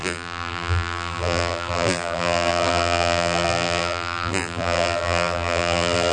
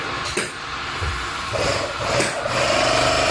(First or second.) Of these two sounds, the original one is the second